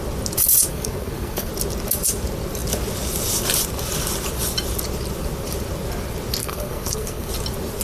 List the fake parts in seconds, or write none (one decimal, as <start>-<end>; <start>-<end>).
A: 0.7-1.5; 6.4-7.3